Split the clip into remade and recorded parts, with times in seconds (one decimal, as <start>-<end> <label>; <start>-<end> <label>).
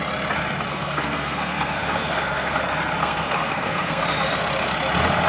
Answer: 0.0-0.7 recorded; 0.7-2.6 remade; 2.6-3.0 recorded; 3.0-4.0 remade; 4.0-5.3 recorded